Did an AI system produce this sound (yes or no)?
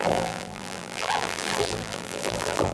yes